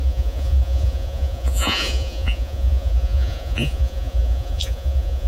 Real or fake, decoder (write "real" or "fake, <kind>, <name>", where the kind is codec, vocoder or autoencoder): fake, vocoder, Vocos